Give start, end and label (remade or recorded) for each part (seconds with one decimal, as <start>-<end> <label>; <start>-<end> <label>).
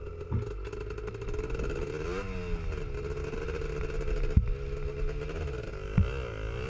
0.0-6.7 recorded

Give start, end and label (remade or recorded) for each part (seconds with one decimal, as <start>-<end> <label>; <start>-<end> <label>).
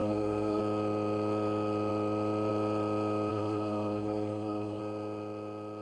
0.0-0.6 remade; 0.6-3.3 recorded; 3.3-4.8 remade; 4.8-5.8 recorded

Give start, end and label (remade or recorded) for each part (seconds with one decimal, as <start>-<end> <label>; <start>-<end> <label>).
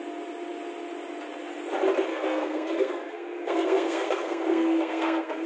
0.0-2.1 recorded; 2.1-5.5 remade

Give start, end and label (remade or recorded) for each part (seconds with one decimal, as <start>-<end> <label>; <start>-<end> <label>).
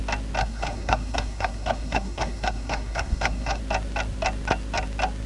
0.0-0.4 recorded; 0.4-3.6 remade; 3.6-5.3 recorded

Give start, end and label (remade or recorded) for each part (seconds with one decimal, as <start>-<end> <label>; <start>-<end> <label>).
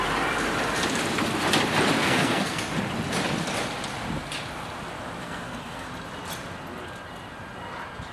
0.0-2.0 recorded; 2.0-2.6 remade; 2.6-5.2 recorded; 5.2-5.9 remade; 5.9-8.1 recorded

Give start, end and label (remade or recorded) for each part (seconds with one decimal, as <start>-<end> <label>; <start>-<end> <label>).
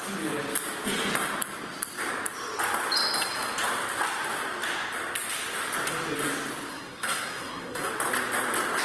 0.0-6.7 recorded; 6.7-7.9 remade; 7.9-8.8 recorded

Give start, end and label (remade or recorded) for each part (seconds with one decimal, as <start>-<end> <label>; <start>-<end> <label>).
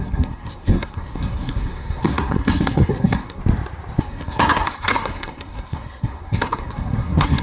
0.0-3.4 remade; 3.4-4.0 recorded; 4.0-7.4 remade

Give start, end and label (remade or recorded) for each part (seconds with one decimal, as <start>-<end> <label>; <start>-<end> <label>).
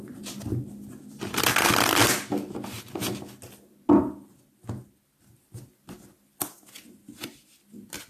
0.0-8.1 recorded